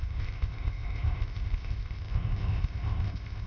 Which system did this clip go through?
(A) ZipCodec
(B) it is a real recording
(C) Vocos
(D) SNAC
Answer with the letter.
A